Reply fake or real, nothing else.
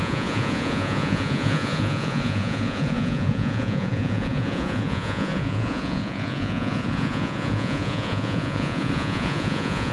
fake